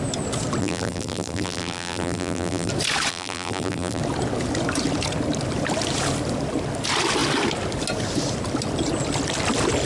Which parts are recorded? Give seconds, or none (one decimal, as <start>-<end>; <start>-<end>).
0.0-0.6; 2.7-3.1; 4.0-9.9